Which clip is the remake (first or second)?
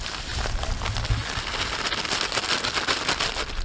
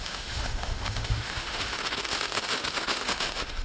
second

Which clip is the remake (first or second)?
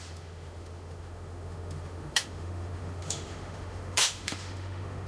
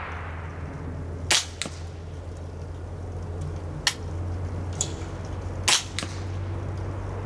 first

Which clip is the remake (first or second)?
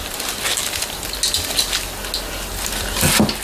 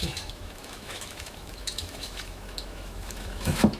second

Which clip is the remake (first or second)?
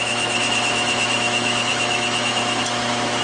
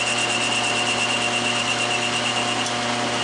first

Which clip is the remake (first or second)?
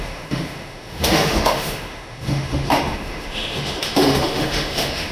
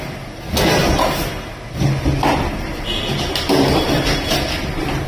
first